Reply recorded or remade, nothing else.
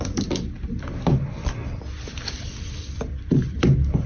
remade